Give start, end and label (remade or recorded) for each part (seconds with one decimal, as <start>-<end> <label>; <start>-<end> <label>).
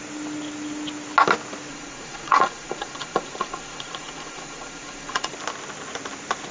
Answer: 0.0-1.7 recorded; 1.7-5.3 remade; 5.3-6.5 recorded